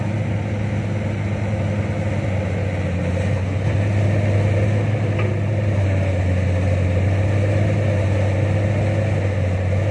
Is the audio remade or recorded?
recorded